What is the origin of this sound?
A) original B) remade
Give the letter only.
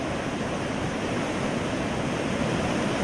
B